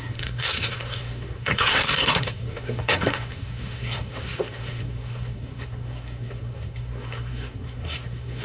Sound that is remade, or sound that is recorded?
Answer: remade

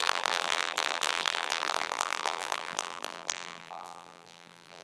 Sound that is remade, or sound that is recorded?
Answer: remade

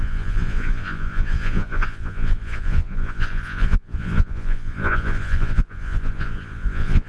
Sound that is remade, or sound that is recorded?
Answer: remade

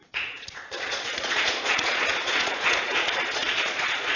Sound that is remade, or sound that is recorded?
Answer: remade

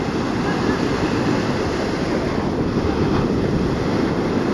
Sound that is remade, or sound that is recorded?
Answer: recorded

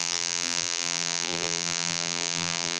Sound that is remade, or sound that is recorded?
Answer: remade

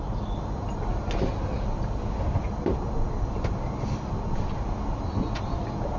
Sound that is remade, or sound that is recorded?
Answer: recorded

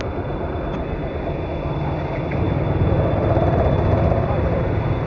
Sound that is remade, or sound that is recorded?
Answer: recorded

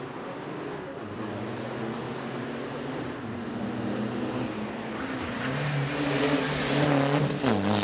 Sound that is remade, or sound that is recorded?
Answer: recorded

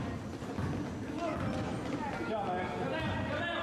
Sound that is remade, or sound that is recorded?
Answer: recorded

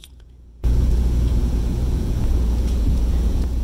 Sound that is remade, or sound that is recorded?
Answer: remade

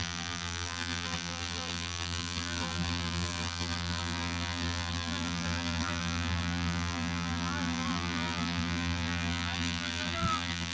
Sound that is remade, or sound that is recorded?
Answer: remade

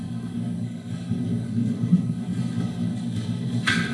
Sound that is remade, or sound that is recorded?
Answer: remade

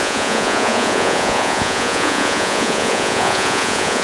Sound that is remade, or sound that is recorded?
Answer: remade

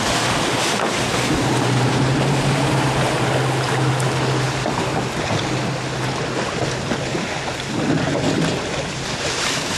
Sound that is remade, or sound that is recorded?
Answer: recorded